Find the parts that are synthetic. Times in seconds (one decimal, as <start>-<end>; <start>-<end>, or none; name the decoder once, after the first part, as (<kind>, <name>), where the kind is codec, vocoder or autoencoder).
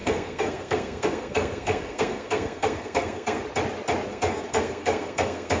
0.0-3.4 (codec, SNAC); 4.1-5.6